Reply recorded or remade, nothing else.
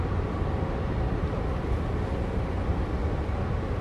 recorded